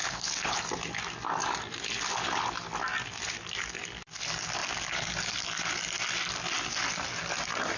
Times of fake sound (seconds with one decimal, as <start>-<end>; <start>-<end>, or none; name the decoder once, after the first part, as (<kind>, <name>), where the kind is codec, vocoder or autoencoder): 0.0-0.6 (codec, HILCodec)